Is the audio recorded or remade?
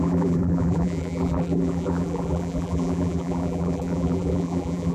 remade